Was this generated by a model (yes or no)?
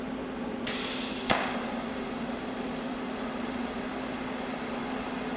no